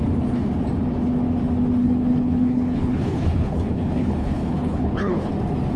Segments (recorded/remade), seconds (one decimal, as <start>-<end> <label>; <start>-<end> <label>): 0.0-1.8 recorded; 1.8-5.3 remade; 5.3-5.8 recorded